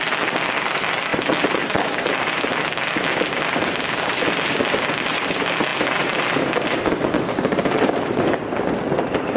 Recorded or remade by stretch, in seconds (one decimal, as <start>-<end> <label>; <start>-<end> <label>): 0.0-9.4 recorded

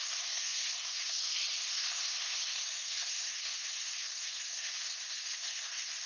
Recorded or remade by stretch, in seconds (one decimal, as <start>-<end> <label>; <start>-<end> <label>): 0.0-6.1 remade

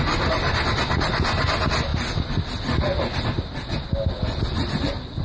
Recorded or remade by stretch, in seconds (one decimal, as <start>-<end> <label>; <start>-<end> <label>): 0.0-5.2 recorded

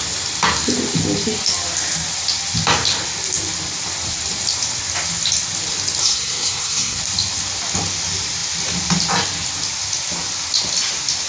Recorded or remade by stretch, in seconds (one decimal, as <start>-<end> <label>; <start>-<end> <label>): 0.0-6.0 recorded; 6.0-7.0 remade; 7.0-11.3 recorded

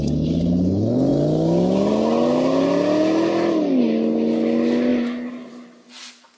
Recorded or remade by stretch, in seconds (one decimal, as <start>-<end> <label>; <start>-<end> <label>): 0.0-6.4 recorded